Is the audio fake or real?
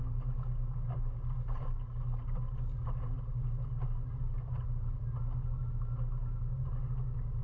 real